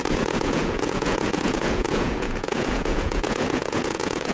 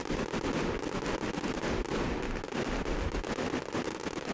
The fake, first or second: first